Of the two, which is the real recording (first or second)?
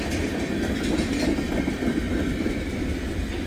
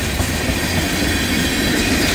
first